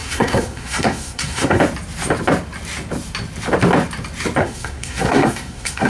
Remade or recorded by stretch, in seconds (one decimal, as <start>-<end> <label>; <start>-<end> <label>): 0.0-1.6 remade; 1.6-4.4 recorded; 4.4-5.9 remade